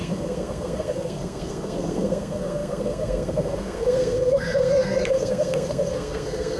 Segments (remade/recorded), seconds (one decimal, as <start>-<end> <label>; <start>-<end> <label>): 0.0-6.6 remade